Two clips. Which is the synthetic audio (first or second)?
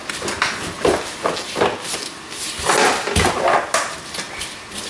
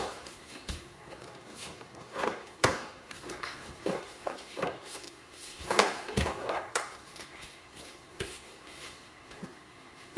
second